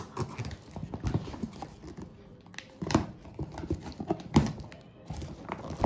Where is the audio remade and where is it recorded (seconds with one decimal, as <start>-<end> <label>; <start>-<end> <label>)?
0.0-5.9 recorded